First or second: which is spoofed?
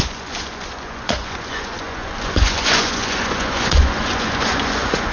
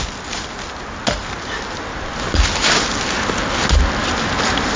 first